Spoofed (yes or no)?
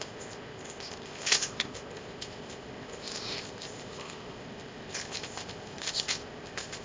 yes